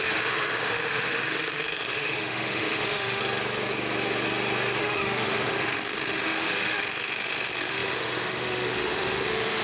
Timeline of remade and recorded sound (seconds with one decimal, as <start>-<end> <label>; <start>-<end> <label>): 0.0-3.2 remade; 3.2-4.8 recorded; 4.8-9.6 remade